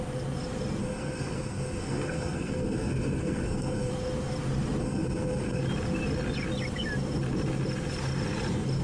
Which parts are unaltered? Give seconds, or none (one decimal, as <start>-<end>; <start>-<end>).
0.0-0.8; 3.9-4.8; 5.6-8.8